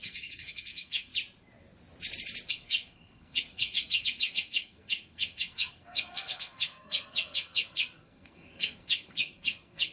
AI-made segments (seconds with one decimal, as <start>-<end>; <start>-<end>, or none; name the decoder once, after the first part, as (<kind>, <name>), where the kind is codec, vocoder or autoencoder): 0.0-1.1 (codec, SNAC); 2.5-9.9